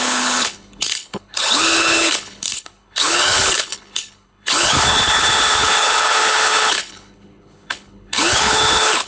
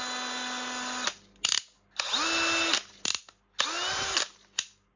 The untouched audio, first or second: second